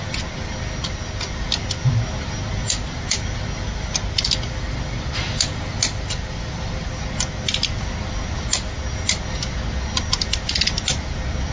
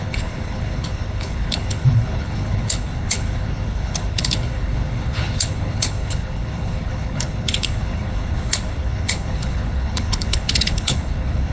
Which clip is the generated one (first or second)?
second